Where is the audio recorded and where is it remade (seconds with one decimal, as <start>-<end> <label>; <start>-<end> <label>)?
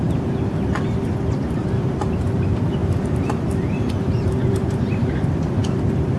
0.0-2.8 recorded; 2.8-5.1 remade; 5.1-6.2 recorded